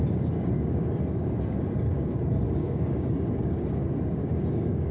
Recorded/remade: remade